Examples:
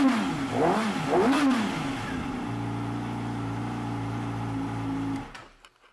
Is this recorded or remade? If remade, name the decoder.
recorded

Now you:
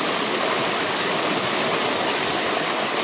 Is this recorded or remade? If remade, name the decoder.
recorded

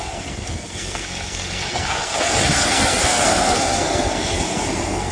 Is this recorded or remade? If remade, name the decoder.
remade, codec, SNAC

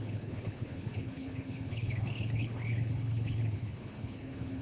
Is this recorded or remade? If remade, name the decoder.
remade, codec, HILCodec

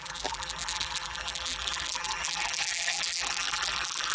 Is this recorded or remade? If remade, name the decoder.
remade, vocoder, BigVGAN v2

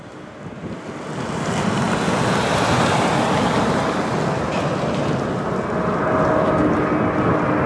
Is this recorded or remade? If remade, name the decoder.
recorded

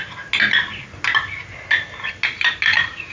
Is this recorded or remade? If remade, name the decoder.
recorded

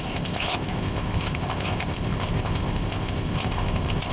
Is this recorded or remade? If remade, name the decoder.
remade, codec, ZipCodec